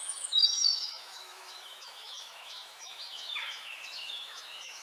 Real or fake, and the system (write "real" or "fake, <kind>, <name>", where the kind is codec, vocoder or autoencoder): fake, autoencoder, DAC-VAE